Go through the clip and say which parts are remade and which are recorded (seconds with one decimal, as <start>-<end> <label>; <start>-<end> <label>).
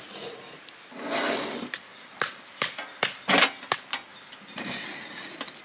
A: 0.0-1.9 recorded; 1.9-3.4 remade; 3.4-4.1 recorded; 4.1-4.6 remade; 4.6-5.6 recorded